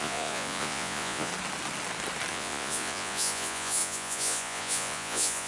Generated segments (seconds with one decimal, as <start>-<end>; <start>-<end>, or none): 0.0-1.3; 2.3-5.5